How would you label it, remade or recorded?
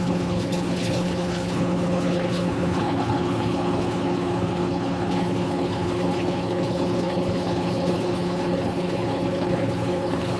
remade